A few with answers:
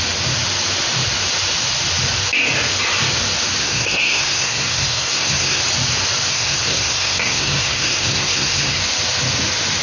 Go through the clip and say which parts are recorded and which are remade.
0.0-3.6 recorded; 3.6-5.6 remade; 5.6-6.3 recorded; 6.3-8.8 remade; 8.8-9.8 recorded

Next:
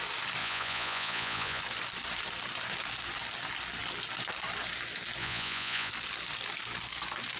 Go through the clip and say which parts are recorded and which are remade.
0.0-0.4 recorded; 0.4-1.6 remade; 1.6-5.2 recorded; 5.2-5.9 remade; 5.9-7.4 recorded